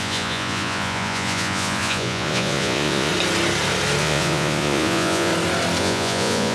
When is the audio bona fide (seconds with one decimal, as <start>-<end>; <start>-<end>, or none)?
3.1-4.0; 5.3-5.8